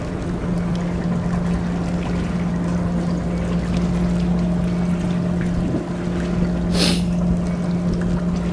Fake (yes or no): no